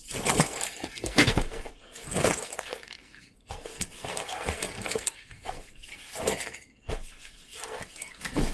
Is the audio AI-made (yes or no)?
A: yes